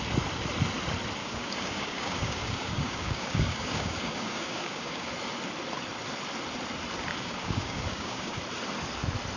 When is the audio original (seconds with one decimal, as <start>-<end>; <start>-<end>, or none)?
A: 0.0-1.2; 5.1-7.1; 8.4-9.4